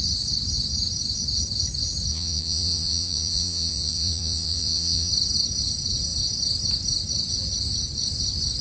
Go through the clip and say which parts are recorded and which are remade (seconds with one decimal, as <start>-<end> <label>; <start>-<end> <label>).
0.0-2.1 recorded; 2.1-5.1 remade; 5.1-8.6 recorded